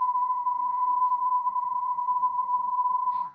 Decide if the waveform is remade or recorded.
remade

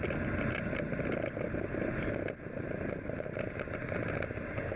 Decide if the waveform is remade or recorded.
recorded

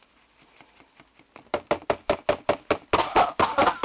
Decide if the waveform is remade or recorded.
recorded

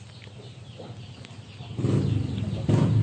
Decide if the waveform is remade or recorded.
recorded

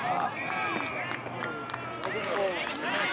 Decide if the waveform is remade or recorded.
recorded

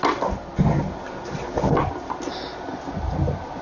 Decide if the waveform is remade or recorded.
recorded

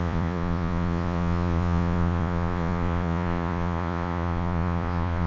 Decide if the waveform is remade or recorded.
remade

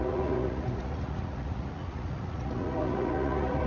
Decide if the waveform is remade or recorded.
remade